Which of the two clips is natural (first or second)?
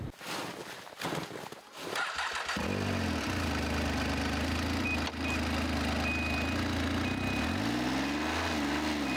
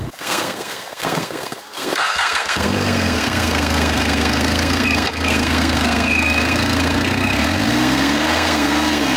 first